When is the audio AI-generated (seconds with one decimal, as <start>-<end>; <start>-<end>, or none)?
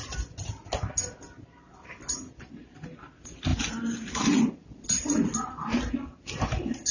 none